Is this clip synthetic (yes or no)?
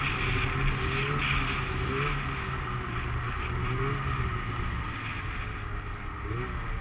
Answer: no